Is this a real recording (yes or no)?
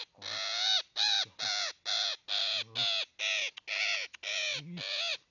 yes